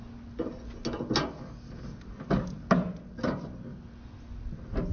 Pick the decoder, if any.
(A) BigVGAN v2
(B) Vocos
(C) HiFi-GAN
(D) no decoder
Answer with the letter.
D